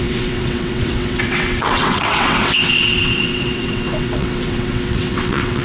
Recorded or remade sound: remade